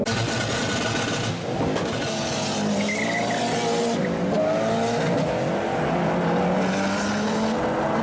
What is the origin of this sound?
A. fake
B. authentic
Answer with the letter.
B